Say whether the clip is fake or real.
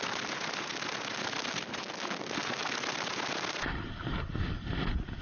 real